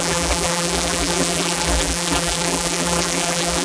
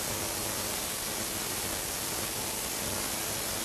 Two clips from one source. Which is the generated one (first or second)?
first